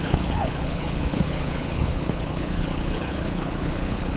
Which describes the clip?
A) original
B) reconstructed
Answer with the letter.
B